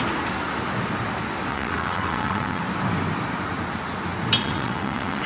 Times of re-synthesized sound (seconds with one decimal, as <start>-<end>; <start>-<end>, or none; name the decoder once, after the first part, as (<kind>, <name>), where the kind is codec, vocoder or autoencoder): 1.5-2.6 (vocoder, WaveNeXt); 4.4-5.3